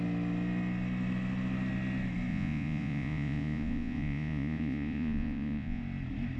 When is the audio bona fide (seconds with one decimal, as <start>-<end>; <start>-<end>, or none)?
0.0-2.3; 5.8-6.4